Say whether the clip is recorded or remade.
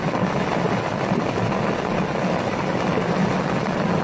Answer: recorded